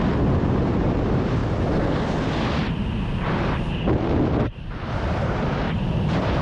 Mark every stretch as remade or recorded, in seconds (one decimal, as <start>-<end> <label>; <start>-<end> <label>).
0.0-1.4 remade; 1.4-4.4 recorded; 4.4-6.4 remade

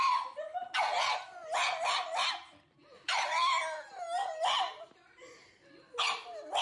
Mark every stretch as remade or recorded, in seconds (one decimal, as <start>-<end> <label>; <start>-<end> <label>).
0.0-6.6 recorded

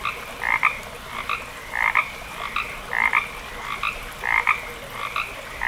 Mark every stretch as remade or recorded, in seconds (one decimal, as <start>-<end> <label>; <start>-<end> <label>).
0.0-1.6 recorded; 1.6-2.3 remade; 2.3-5.7 recorded

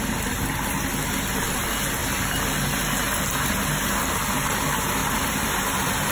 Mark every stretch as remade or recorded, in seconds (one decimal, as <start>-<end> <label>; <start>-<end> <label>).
0.0-5.0 recorded; 5.0-6.1 remade

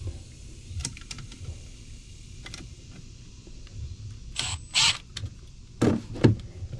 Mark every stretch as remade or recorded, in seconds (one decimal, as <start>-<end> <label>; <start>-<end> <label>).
0.0-0.8 recorded; 0.8-2.7 remade; 2.7-3.7 recorded; 3.7-5.6 remade; 5.6-6.8 recorded

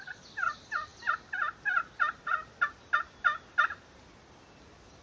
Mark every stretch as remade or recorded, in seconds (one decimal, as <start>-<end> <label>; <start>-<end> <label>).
0.0-5.0 recorded

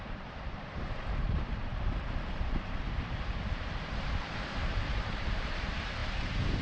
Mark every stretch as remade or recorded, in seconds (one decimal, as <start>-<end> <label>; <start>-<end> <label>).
0.0-6.6 remade